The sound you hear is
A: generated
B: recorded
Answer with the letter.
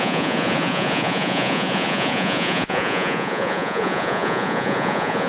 A